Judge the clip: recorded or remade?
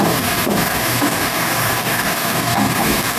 remade